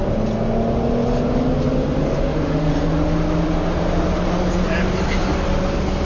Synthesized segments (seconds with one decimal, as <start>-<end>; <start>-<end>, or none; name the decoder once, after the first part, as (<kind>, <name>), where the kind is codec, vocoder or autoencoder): 2.0-2.7 (autoencoder, DAC-VAE)